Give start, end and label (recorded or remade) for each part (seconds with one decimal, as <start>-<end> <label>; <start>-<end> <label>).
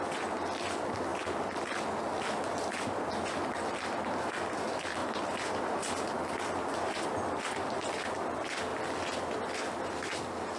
0.0-10.6 recorded